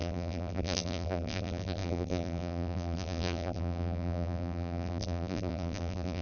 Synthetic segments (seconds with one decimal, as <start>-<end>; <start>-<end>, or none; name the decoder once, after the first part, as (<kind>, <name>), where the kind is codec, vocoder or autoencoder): 0.0-6.2 (vocoder, BigVGAN v2)